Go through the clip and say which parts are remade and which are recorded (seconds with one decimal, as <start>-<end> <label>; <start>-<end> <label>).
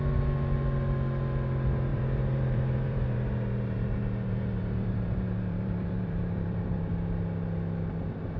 0.0-1.9 recorded; 1.9-6.9 remade; 6.9-8.4 recorded